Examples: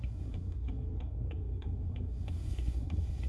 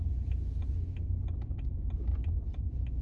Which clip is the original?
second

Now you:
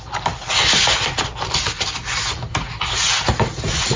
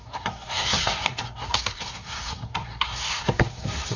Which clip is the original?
first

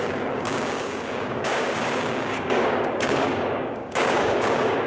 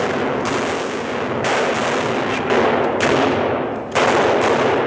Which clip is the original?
second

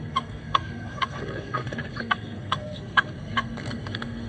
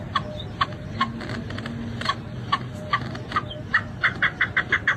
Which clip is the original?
second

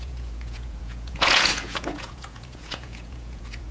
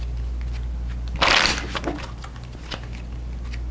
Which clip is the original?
second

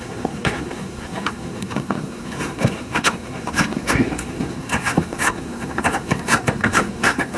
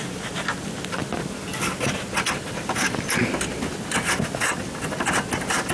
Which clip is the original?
second